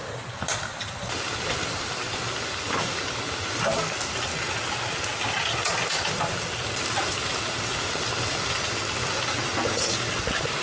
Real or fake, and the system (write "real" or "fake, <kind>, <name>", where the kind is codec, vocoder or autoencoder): real